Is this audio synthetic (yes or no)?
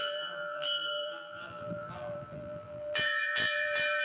yes